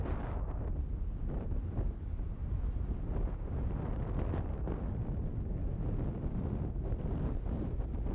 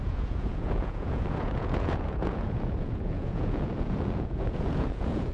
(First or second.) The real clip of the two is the first